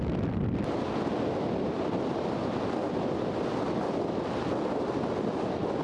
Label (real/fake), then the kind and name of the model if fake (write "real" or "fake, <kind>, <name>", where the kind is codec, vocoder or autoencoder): real